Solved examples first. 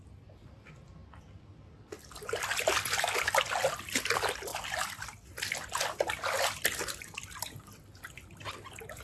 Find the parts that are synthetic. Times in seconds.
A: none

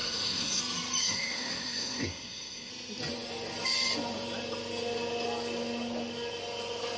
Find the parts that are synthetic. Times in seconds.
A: 0.0-0.6 (codec, SNAC); 1.0-2.7

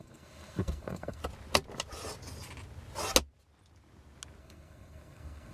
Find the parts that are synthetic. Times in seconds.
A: 0.0-1.2 (codec, SNAC); 4.4-5.5

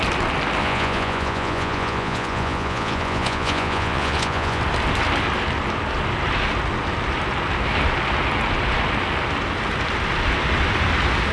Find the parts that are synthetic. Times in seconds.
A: 0.6-4.6 (vocoder, Vocos)